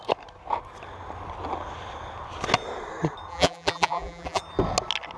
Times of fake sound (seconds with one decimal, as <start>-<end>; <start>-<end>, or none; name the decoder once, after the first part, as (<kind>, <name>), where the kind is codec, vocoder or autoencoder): 3.3-4.4 (vocoder, BigVGAN v2)